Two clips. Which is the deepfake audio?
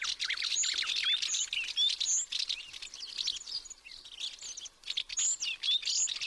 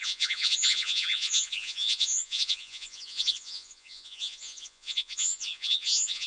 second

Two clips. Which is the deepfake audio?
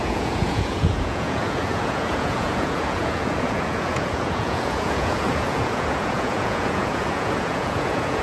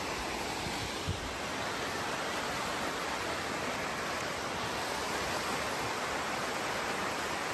first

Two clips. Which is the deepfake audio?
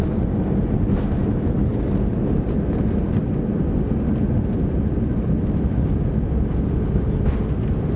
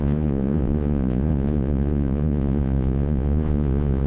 second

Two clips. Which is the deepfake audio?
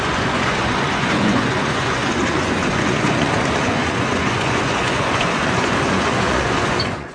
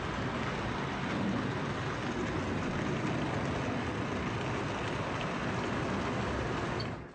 first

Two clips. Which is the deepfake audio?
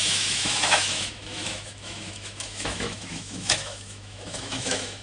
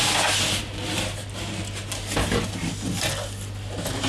first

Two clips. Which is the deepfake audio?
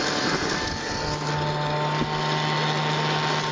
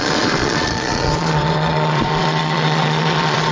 second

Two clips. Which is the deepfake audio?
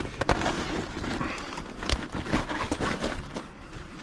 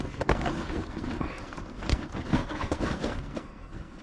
second